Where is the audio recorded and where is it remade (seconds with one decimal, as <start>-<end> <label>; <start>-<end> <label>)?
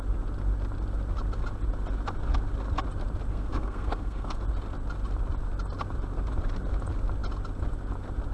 0.0-3.3 recorded; 3.3-4.4 remade; 4.4-8.3 recorded